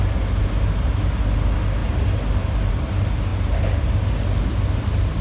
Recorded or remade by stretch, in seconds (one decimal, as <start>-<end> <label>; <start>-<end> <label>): 0.0-5.2 recorded